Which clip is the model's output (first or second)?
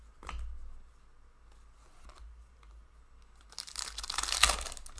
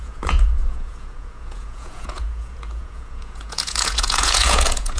second